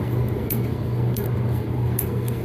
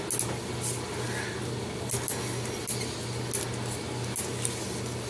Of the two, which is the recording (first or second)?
second